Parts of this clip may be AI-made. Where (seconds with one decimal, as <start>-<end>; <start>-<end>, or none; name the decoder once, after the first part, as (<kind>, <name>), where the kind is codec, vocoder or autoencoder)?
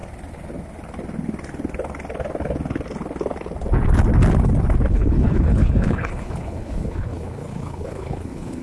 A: 4.9-8.6 (codec, HILCodec)